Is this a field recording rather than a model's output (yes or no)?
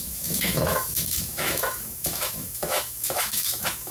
no